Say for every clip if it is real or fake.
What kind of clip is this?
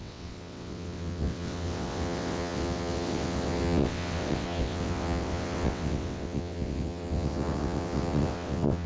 fake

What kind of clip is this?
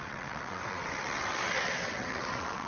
fake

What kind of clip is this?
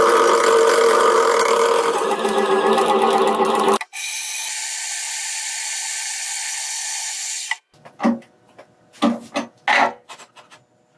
real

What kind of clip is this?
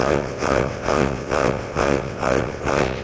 fake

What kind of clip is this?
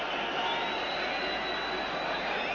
real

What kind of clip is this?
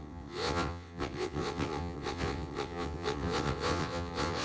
fake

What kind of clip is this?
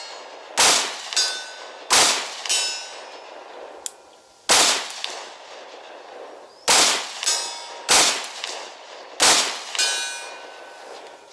real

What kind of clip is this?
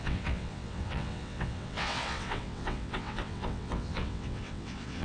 fake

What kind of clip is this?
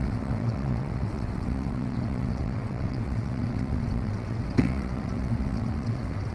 fake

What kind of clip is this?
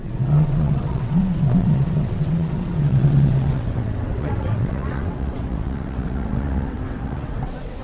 fake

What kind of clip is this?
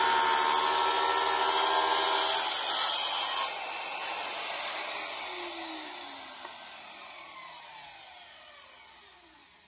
real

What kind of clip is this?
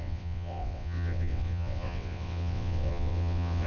fake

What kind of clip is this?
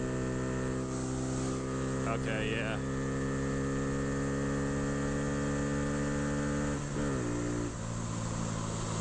real